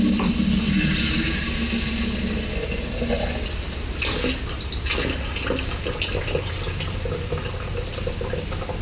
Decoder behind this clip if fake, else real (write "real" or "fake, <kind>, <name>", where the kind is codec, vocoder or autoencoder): real